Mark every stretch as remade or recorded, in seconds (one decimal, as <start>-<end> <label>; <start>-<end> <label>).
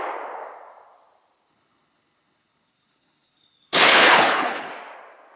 0.0-1.5 recorded; 1.5-4.7 remade; 4.7-5.4 recorded